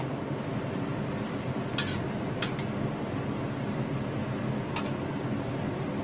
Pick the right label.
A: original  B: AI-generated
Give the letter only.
A